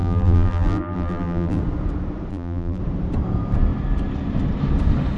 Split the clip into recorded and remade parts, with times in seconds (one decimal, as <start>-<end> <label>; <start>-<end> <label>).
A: 0.0-1.6 remade; 1.6-2.3 recorded; 2.3-2.8 remade; 2.8-5.2 recorded